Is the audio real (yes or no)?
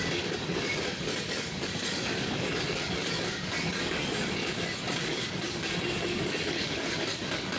no